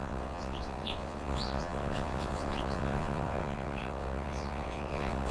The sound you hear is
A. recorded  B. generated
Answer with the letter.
B